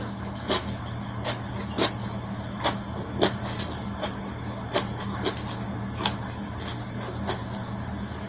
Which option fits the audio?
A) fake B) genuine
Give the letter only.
B